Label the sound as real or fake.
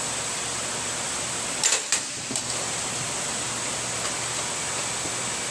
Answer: real